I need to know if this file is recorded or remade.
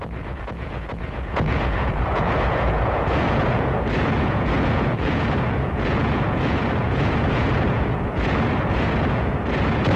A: remade